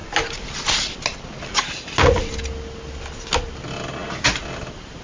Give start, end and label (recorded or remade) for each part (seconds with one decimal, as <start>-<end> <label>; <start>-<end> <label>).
0.0-5.0 recorded